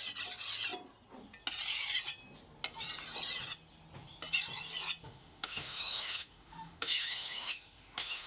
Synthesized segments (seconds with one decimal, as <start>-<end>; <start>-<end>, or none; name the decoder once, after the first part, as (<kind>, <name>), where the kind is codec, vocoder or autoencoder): 5.0-8.3 (autoencoder, DAC-VAE)